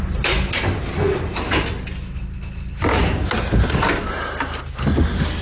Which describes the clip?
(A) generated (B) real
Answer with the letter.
B